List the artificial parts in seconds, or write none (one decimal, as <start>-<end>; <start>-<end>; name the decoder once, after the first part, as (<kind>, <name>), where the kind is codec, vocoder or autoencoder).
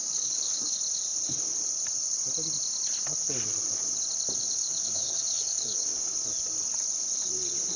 0.0-0.7 (codec, DAC); 4.6-6.0